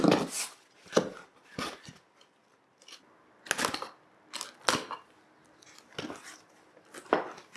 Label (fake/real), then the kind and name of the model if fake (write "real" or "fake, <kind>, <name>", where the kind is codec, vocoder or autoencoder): real